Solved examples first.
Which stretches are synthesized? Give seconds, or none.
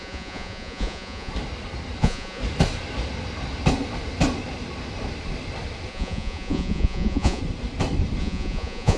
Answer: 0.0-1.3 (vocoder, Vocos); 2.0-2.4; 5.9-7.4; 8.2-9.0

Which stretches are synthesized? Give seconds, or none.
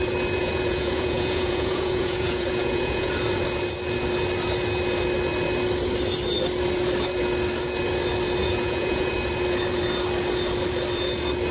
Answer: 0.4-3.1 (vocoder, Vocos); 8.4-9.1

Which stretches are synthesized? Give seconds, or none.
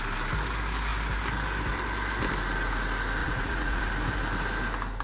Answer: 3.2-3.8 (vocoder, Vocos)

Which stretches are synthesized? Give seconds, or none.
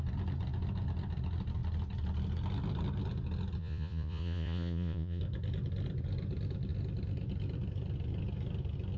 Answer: 3.6-5.2 (vocoder, Vocos)